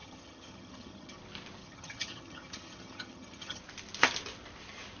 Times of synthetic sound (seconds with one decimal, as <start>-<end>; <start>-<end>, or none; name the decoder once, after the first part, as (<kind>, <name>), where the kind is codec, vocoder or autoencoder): 0.0-1.2 (vocoder, HiFi-GAN); 1.6-3.6